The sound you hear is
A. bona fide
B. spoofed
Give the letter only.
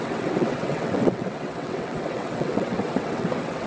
B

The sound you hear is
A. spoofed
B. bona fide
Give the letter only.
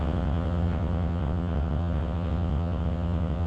A